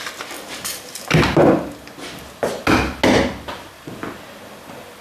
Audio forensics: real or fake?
real